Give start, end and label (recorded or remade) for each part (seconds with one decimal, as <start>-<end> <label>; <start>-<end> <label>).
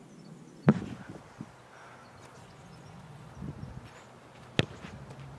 0.0-2.4 recorded; 2.4-3.3 remade; 3.3-5.4 recorded